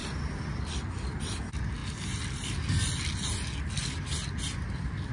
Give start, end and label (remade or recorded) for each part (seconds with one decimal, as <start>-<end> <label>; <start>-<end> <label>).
0.0-5.1 recorded